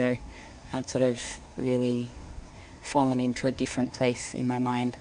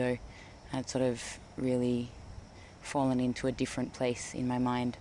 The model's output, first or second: first